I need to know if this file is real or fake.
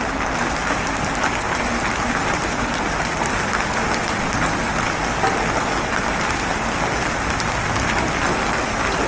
real